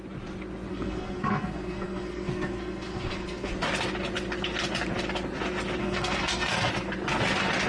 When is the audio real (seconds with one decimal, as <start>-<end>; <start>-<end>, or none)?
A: 0.0-0.7; 3.5-5.8; 6.7-7.7